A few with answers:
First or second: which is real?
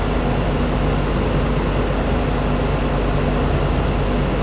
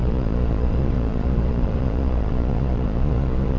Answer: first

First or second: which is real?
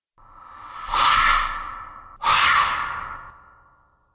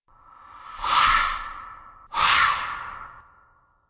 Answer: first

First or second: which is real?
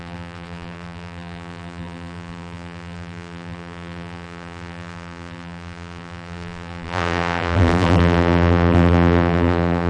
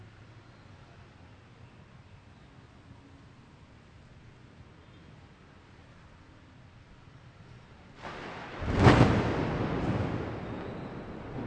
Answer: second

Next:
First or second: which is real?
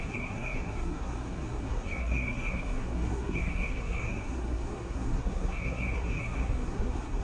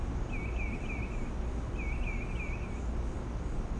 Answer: second